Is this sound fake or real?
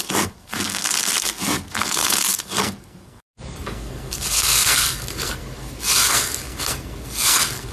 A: fake